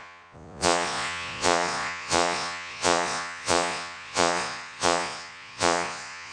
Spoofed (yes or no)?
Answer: yes